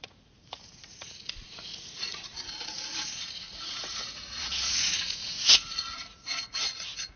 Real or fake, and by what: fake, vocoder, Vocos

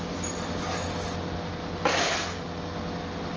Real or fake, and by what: real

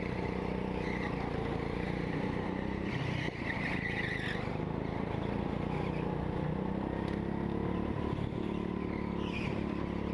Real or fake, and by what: real